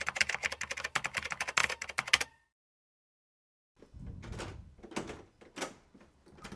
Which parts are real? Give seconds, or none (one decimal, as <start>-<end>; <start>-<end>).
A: 0.0-6.6